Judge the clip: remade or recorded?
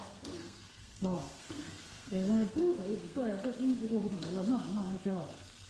remade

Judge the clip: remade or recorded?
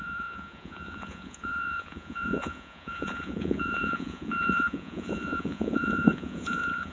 remade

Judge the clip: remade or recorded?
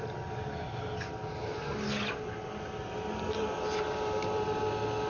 recorded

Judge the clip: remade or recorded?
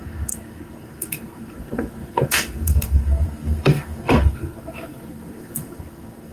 remade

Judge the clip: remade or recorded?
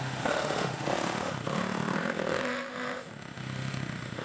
remade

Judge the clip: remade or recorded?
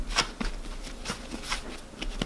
recorded